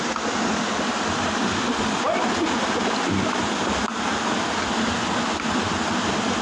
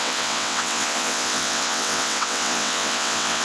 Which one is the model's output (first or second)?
second